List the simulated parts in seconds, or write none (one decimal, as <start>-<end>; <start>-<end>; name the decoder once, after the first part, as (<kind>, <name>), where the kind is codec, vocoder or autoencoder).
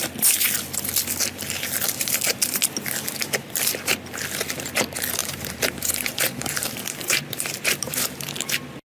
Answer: 5.2-8.3 (vocoder, BigVGAN v2)